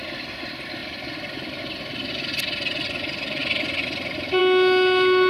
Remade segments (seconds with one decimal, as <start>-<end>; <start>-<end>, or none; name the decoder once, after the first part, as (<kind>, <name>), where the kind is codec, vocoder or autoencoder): none